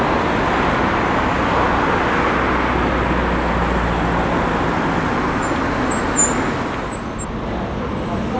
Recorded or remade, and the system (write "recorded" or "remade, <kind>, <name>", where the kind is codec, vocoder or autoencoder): recorded